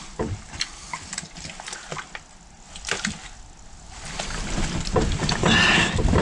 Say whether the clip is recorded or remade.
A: recorded